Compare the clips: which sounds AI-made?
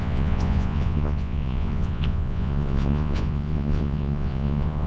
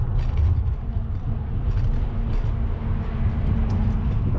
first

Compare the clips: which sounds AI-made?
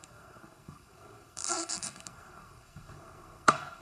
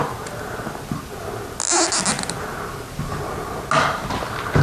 first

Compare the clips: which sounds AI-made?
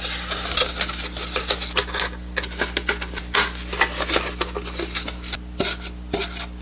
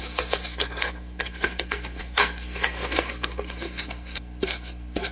second